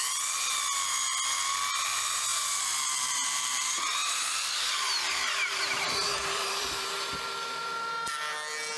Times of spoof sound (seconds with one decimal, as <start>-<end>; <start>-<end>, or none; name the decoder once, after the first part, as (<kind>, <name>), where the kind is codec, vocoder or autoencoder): 2.3-4.4 (vocoder, BigVGAN v2); 5.1-7.1